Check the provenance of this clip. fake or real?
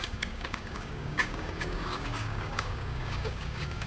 fake